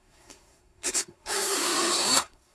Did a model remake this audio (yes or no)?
yes